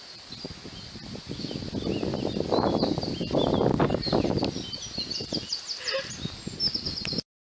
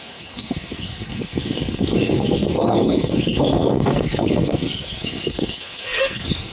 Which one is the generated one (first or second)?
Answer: second